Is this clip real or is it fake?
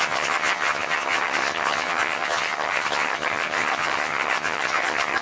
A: fake